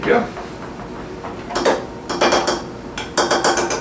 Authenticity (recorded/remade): recorded